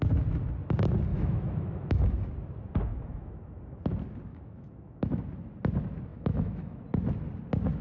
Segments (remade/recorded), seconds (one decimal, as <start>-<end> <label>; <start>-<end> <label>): 0.0-1.1 recorded; 1.1-2.3 remade; 2.3-2.9 recorded; 2.9-3.6 remade; 3.6-4.3 recorded; 4.3-5.2 remade; 5.2-6.1 recorded; 6.1-6.8 remade; 6.8-7.8 recorded